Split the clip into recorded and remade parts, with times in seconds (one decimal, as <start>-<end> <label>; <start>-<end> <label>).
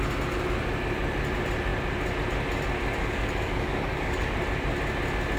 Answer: 0.0-3.0 recorded; 3.0-4.3 remade; 4.3-5.4 recorded